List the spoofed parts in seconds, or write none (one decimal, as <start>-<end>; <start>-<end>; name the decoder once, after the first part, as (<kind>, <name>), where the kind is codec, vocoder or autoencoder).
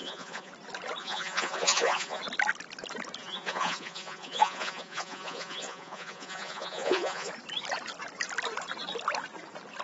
0.0-0.5 (vocoder, Vocos); 1.0-2.2; 3.2-7.3